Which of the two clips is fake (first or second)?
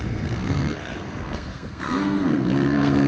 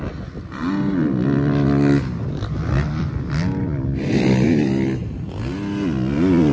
first